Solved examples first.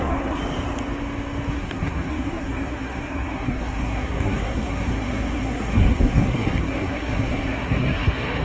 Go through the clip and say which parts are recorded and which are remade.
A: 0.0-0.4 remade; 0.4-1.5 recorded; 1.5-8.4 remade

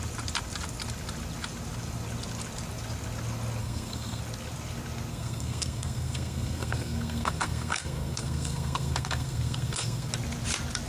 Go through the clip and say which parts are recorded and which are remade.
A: 0.0-3.6 recorded; 3.6-4.2 remade; 4.2-5.1 recorded; 5.1-10.1 remade; 10.1-10.9 recorded

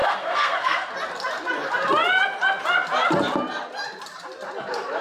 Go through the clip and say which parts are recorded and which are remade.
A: 0.0-0.9 remade; 0.9-5.0 recorded

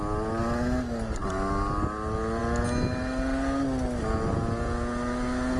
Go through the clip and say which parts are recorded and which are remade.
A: 0.0-5.6 recorded

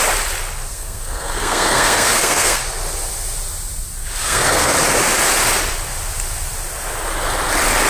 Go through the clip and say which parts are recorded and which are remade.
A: 0.0-0.7 recorded; 0.7-2.6 remade; 2.6-4.2 recorded; 4.2-4.7 remade; 4.7-7.9 recorded